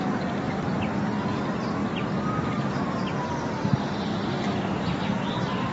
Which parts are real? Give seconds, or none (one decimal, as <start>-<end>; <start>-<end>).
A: 0.0-5.7